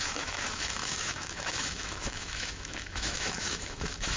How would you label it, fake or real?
fake